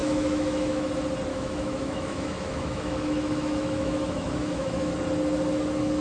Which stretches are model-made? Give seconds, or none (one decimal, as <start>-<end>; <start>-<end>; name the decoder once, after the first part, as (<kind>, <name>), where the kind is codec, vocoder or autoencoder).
0.0-0.9 (autoencoder, DAC-VAE); 1.3-4.9

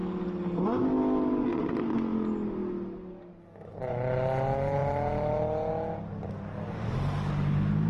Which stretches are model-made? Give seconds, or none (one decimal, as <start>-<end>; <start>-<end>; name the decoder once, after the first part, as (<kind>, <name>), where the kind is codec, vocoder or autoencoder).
none